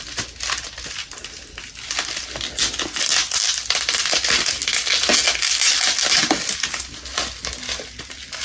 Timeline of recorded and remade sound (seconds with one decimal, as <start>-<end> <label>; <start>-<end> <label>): 0.0-8.4 recorded